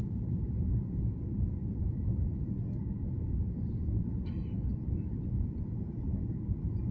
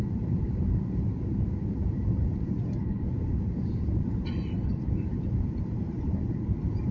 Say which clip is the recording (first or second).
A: first